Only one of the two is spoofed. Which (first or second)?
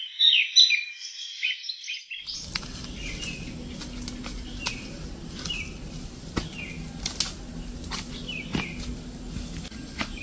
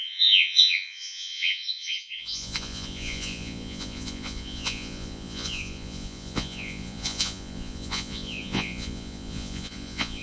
second